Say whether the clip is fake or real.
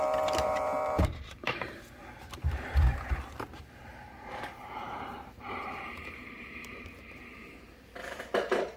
fake